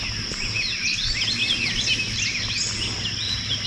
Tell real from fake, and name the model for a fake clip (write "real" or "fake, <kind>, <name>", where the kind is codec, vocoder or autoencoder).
real